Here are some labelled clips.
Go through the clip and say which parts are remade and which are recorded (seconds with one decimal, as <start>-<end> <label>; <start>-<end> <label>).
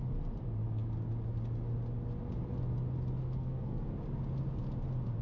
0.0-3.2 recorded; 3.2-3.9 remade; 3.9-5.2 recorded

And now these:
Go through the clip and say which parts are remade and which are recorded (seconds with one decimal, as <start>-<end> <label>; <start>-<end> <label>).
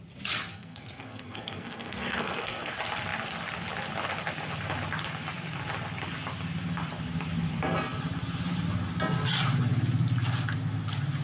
0.0-0.5 recorded; 0.5-2.7 remade; 2.7-11.2 recorded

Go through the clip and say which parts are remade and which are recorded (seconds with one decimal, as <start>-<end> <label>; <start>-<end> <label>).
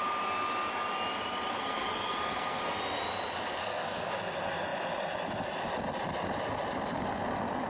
0.0-1.5 recorded; 1.5-2.6 remade; 2.6-3.6 recorded; 3.6-4.2 remade; 4.2-7.7 recorded